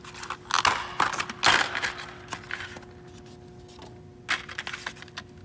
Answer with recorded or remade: recorded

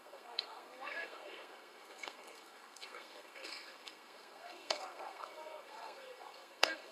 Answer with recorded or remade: remade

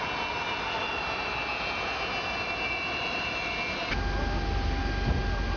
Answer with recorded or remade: recorded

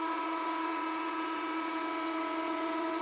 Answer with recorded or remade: remade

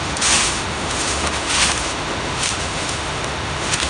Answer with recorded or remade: remade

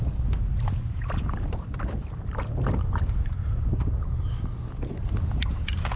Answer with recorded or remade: recorded